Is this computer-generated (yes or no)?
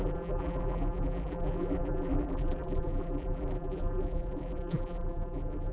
yes